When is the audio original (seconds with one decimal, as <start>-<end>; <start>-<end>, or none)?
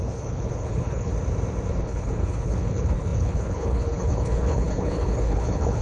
1.1-1.7